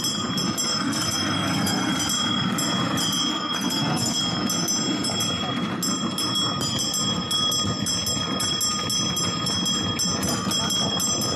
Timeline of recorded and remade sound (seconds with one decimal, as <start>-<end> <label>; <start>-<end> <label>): 0.0-0.7 recorded; 0.7-1.9 remade; 1.9-3.3 recorded; 3.3-4.2 remade; 4.2-11.4 recorded